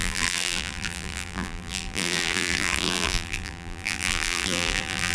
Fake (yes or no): yes